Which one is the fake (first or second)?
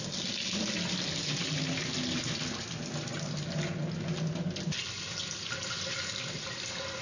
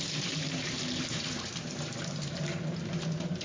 second